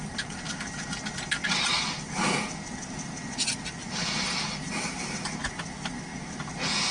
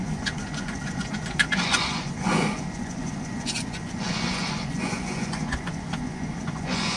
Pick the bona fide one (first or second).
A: first